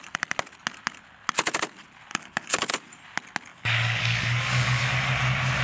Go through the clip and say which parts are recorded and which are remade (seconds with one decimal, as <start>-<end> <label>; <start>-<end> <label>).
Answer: 0.0-2.1 recorded; 2.1-2.7 remade; 2.7-3.5 recorded; 3.5-5.1 remade; 5.1-5.6 recorded